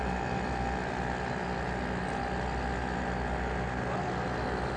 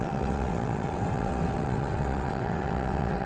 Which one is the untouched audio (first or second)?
first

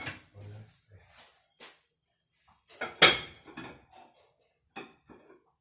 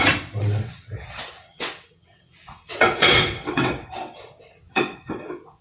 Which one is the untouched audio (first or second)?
first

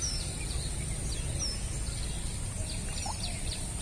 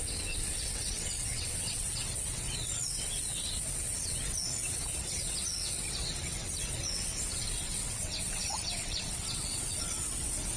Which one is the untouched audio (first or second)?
first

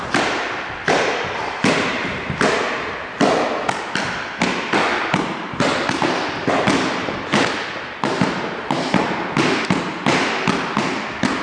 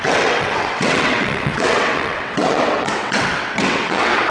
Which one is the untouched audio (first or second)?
first